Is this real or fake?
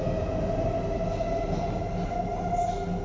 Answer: real